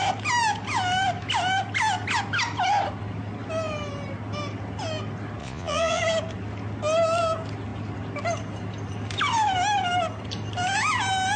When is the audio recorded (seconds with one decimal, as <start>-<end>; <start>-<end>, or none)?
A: 0.0-5.4; 6.0-11.4

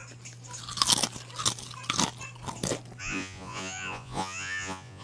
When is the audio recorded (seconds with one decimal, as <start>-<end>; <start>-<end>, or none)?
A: 0.0-3.0